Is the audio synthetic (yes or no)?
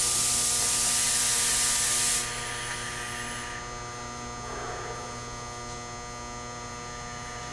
no